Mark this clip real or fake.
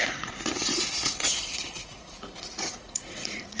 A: fake